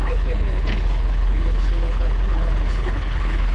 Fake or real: fake